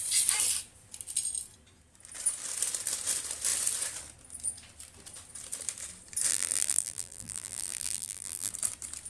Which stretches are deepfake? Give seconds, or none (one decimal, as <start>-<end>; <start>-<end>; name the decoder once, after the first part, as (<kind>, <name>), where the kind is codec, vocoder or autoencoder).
6.3-8.5 (vocoder, BigVGAN v2)